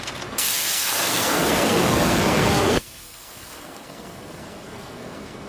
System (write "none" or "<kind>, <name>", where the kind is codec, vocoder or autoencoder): codec, SNAC